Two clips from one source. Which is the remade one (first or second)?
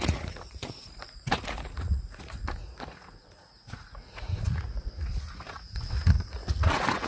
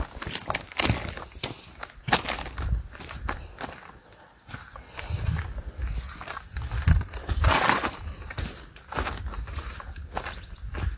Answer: first